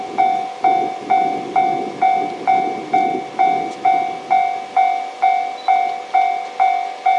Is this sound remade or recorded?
recorded